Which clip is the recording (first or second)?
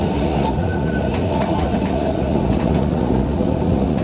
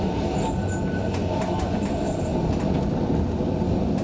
second